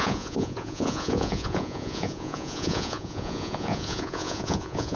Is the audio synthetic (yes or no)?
yes